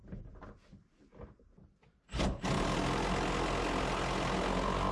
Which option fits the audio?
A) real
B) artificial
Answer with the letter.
A